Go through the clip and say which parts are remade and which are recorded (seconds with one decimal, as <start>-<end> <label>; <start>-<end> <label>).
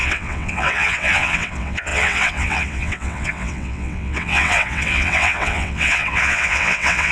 0.0-7.1 remade